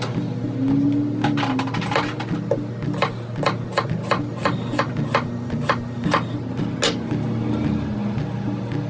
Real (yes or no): yes